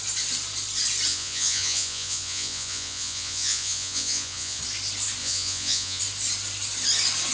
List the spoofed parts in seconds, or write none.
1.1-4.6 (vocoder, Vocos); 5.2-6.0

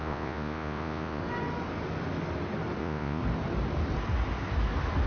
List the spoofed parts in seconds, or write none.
0.0-1.2 (vocoder, Vocos); 2.8-3.2

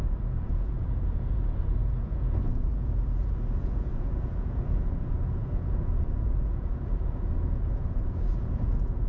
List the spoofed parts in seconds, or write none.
0.0-9.1 (vocoder, Vocos)

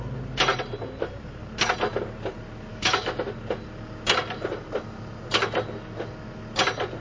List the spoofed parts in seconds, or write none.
2.7-3.3 (autoencoder, DAC-VAE)